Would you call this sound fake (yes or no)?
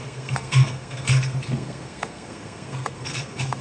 yes